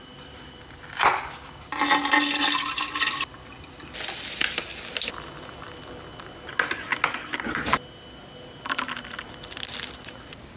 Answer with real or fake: real